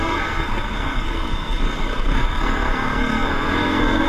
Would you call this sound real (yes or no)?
no